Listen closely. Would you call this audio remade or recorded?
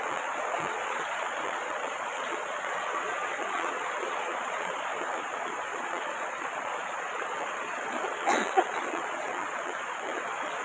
remade